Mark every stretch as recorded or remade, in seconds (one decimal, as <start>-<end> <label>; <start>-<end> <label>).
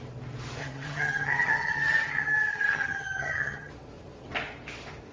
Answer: 0.0-0.6 recorded; 0.6-3.7 remade; 3.7-5.1 recorded